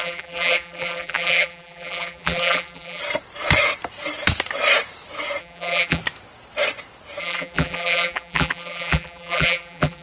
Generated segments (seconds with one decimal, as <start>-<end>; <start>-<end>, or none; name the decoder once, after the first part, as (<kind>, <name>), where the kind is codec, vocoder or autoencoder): 0.0-3.0 (vocoder, BigVGAN v2); 5.4-6.0; 7.2-10.0